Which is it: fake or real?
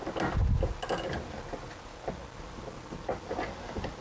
real